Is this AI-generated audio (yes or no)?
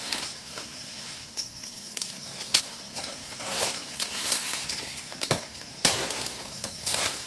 yes